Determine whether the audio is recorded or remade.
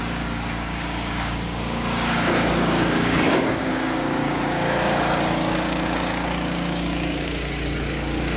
remade